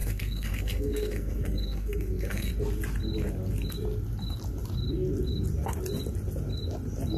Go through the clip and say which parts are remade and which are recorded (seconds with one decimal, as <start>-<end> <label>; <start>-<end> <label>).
0.0-2.5 remade; 2.5-7.2 recorded